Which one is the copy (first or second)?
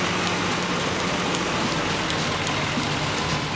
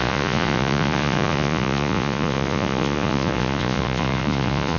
second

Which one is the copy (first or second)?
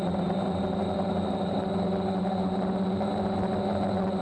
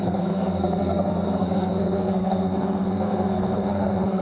second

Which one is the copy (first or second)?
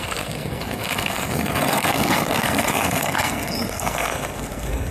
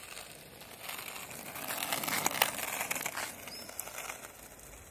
first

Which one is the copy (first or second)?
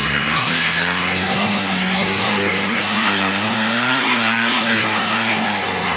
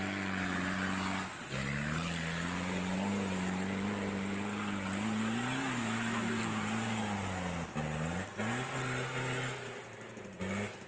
first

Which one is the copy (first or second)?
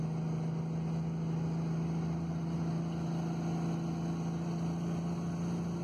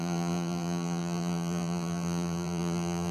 second